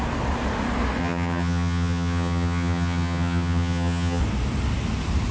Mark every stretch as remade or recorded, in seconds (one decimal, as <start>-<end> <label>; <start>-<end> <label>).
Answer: 0.0-1.0 recorded; 1.0-4.2 remade; 4.2-5.3 recorded